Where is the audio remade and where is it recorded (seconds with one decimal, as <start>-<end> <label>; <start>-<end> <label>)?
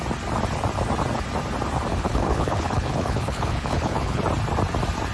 0.0-1.9 recorded; 1.9-4.2 remade; 4.2-5.1 recorded